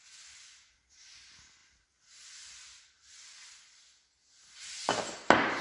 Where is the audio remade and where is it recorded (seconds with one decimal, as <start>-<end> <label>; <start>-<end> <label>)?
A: 0.0-5.6 recorded